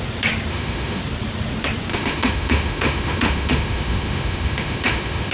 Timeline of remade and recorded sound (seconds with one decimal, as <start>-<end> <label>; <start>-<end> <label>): 0.0-0.5 recorded; 0.5-1.0 remade; 1.0-1.9 recorded; 1.9-5.3 remade